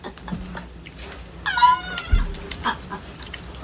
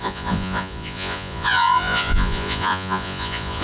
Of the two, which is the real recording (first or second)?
first